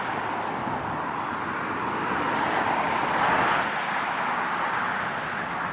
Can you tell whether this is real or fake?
real